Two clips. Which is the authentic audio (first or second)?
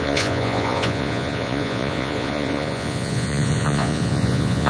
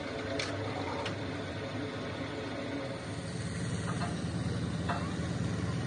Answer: second